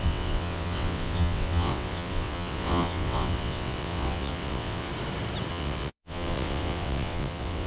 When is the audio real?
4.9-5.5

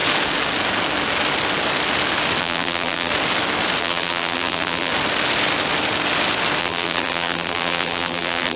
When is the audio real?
0.0-2.4; 3.1-3.8; 4.9-6.6

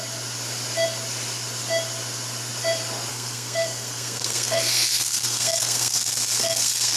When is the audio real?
0.0-3.1

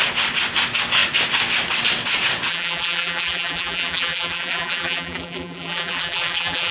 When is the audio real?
0.0-2.5

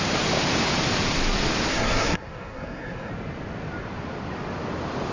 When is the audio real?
0.0-1.7; 3.1-5.1